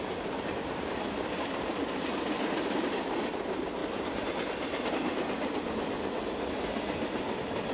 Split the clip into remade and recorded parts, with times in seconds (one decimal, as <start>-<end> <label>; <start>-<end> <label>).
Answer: 0.0-7.7 recorded